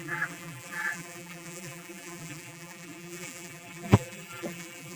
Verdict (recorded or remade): remade